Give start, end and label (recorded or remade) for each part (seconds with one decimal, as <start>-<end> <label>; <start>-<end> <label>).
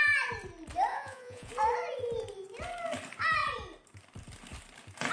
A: 0.0-0.9 recorded; 0.9-1.5 remade; 1.5-5.1 recorded